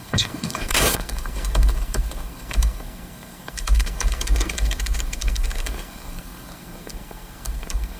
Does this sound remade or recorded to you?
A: remade